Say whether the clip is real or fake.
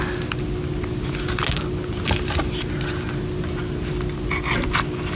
real